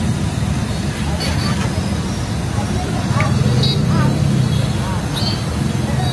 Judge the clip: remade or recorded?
recorded